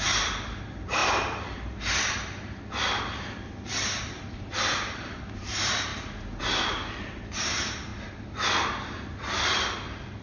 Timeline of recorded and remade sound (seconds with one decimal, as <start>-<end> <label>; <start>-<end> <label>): 0.0-5.9 remade; 5.9-6.4 recorded; 6.4-7.9 remade; 7.9-10.2 recorded